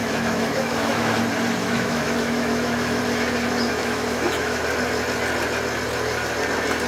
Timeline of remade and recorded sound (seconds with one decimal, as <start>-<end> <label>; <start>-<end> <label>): 0.0-1.2 remade; 1.2-1.6 recorded; 1.6-3.0 remade; 3.0-3.7 recorded; 3.7-4.6 remade; 4.6-6.9 recorded